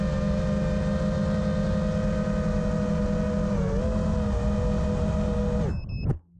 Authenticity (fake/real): real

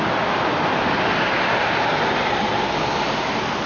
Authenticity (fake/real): real